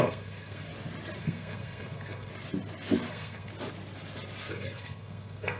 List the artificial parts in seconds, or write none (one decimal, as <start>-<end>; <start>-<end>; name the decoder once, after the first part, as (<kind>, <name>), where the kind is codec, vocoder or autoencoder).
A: 0.0-0.7 (codec, SNAC); 1.2-2.3; 3.1-3.5; 4.5-5.6